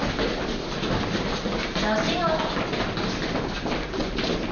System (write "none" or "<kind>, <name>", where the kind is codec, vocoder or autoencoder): none